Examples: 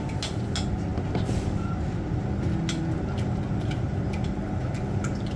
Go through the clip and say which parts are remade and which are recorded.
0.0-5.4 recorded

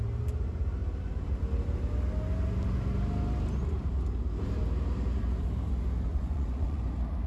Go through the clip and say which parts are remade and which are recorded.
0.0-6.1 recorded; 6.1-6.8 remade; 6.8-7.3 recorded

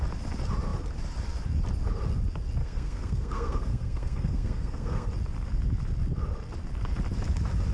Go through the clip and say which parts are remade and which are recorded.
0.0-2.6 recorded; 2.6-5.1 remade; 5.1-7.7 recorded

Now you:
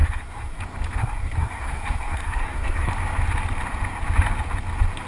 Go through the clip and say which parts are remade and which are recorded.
0.0-0.6 remade; 0.6-1.0 recorded; 1.0-2.9 remade; 2.9-5.1 recorded